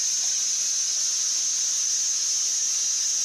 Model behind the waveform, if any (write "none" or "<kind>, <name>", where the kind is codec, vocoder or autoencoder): none